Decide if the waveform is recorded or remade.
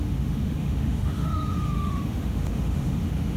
remade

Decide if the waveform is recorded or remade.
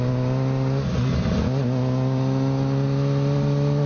recorded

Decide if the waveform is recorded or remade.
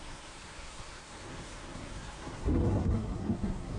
remade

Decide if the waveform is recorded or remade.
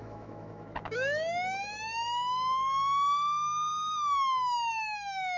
remade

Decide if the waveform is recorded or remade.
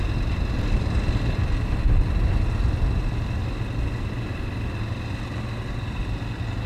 recorded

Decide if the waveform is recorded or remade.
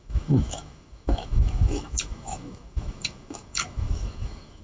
remade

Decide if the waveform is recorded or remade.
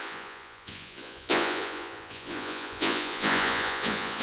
remade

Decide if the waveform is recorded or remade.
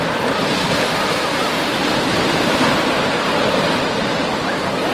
remade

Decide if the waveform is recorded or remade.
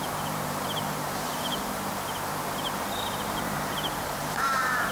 remade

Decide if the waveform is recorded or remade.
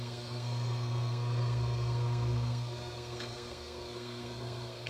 remade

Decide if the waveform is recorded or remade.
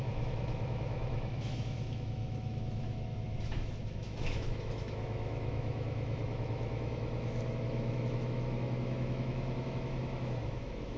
remade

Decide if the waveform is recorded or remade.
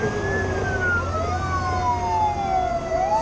recorded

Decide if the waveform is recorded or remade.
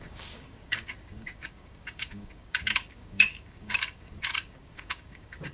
remade